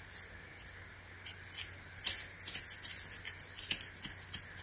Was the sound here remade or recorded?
recorded